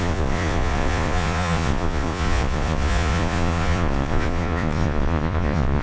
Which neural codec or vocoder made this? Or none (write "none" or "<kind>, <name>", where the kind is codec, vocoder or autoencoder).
vocoder, Vocos